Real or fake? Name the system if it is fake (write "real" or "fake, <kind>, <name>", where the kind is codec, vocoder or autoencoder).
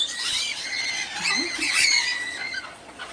fake, vocoder, Vocos